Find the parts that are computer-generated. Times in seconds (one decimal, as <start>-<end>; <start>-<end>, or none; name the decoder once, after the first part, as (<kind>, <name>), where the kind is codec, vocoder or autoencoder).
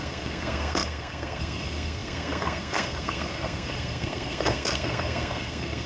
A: 0.0-5.9 (codec, SNAC)